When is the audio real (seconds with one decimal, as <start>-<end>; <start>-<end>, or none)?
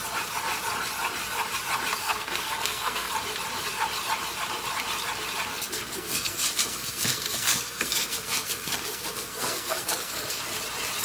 0.0-2.0; 3.1-5.5; 10.4-11.0